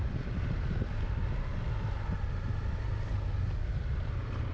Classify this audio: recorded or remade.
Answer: recorded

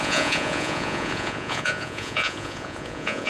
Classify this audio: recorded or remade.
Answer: remade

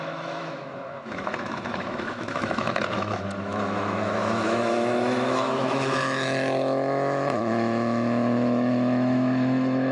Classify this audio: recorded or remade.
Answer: remade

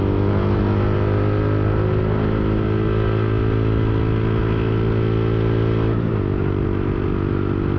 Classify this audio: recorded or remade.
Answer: recorded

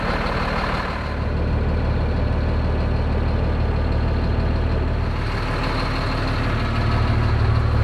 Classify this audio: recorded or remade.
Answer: recorded